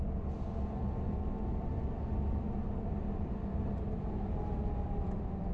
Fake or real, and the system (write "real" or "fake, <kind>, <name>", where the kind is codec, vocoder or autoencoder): real